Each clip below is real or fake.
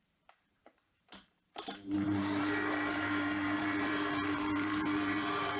fake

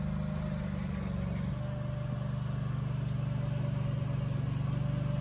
real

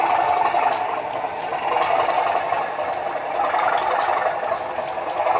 real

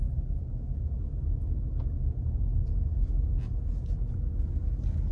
real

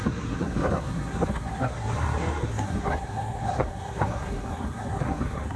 fake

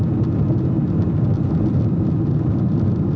real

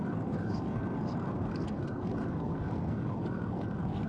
fake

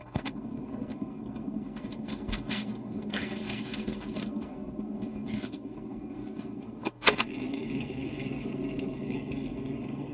fake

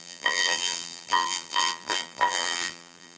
fake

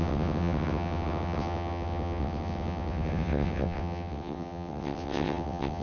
fake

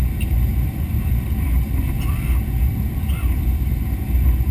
real